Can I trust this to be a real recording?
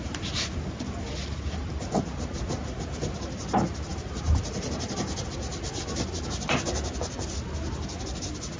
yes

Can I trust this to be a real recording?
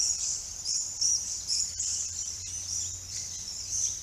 no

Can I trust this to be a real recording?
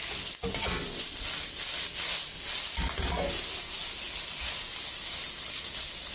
yes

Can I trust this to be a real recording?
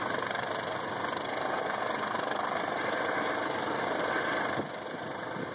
yes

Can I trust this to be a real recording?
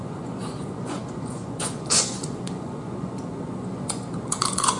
no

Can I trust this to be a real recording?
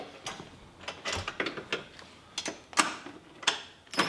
yes